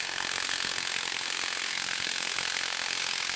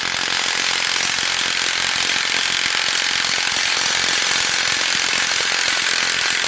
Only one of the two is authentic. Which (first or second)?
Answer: second